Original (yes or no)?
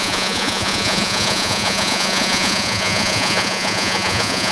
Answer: no